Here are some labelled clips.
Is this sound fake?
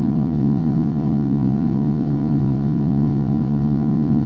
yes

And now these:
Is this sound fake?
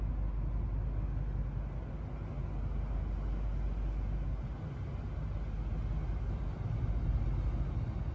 no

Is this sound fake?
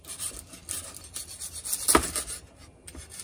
no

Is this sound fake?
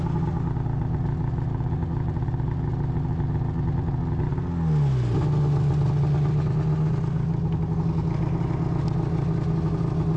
no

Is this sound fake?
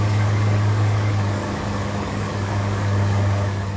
yes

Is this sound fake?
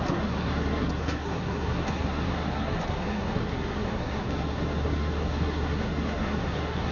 yes